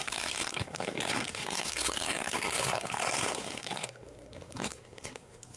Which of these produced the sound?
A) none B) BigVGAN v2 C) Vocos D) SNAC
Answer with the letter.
D